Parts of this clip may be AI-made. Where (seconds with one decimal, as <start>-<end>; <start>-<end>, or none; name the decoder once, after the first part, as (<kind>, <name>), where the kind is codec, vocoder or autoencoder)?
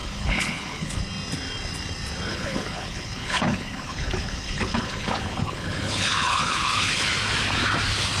0.0-1.0 (codec, HILCodec); 2.3-7.1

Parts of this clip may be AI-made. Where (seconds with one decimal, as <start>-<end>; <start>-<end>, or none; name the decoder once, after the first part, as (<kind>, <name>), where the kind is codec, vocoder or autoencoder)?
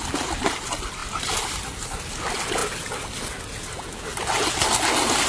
none